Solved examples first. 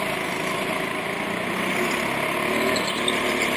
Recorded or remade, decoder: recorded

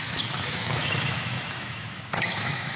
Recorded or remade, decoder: remade, autoencoder, DAC-VAE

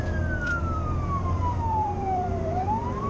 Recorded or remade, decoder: remade, vocoder, BigVGAN v2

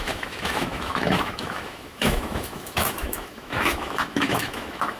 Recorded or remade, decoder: remade, autoencoder, DAC-VAE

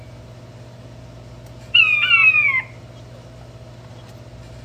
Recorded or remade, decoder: recorded